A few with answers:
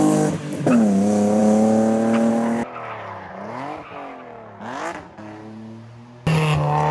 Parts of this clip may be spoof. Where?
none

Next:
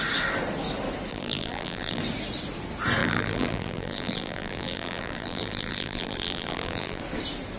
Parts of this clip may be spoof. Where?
1.1-2.0 (vocoder, BigVGAN v2); 3.0-7.0

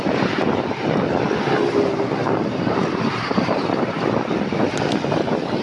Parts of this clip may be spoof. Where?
2.2-3.9 (vocoder, BigVGAN v2)

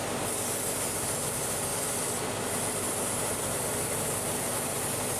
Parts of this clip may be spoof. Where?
0.6-5.2 (vocoder, BigVGAN v2)

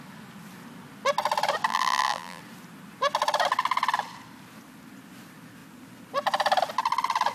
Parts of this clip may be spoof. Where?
1.7-2.4 (vocoder, BigVGAN v2)

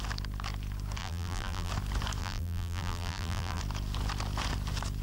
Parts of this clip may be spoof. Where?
1.0-1.7 (vocoder, BigVGAN v2); 2.2-3.6

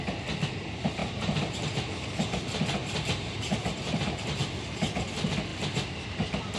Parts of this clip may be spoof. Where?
1.0-4.4 (vocoder, BigVGAN v2)